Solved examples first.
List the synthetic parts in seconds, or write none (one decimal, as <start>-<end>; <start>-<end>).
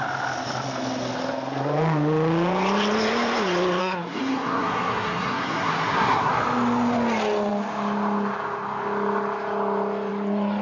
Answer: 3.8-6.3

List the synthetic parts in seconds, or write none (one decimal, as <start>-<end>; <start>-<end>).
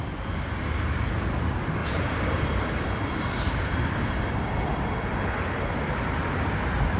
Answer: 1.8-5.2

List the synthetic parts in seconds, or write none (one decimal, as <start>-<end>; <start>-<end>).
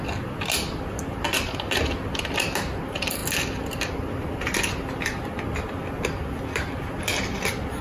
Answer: none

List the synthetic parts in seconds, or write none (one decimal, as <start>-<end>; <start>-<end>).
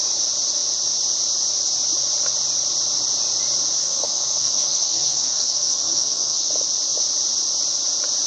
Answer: 3.8-6.5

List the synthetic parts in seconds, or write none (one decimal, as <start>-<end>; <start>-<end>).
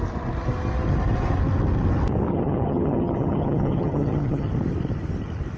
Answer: 2.3-4.5